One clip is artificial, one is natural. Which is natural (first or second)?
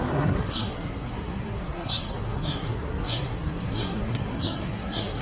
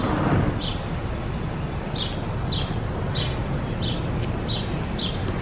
second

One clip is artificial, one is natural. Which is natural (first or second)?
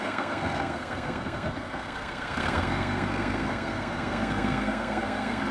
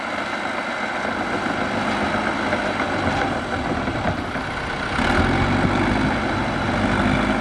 second